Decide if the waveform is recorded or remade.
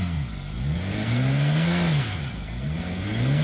remade